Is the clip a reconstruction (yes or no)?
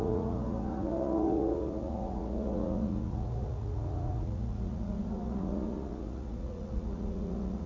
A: yes